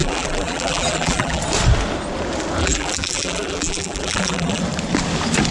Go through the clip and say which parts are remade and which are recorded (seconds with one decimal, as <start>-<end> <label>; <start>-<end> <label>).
0.0-1.4 remade; 1.4-2.6 recorded; 2.6-4.6 remade; 4.6-5.5 recorded